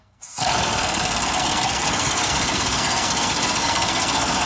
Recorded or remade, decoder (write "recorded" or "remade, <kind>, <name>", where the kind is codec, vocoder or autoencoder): remade, codec, SNAC